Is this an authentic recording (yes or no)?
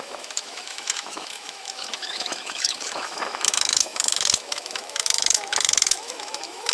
no